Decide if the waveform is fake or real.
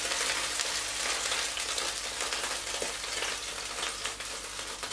real